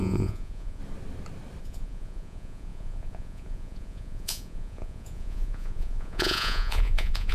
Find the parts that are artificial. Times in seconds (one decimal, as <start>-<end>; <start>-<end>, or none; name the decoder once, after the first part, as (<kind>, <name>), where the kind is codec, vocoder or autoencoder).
0.0-0.8 (vocoder, Vocos); 1.6-7.3